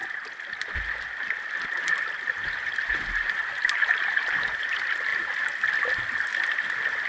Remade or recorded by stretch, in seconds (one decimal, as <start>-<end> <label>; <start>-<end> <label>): 0.0-2.4 recorded; 2.4-4.3 remade; 4.3-7.1 recorded